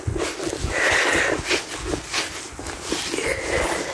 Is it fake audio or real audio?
real